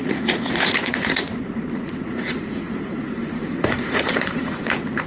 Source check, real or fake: fake